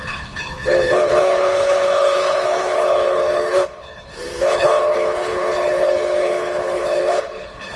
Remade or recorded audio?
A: remade